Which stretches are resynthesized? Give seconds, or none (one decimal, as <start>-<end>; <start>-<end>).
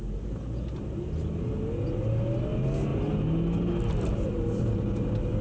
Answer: none